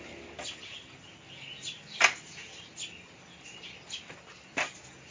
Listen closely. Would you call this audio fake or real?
real